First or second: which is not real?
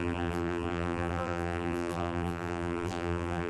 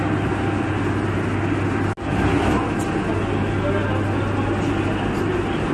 first